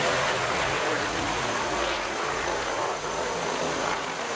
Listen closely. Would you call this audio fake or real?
fake